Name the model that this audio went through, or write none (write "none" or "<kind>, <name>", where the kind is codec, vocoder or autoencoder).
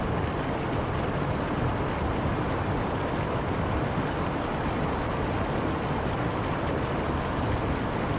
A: none